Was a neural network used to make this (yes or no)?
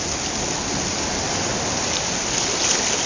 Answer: no